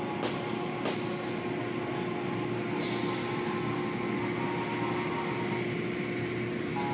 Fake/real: real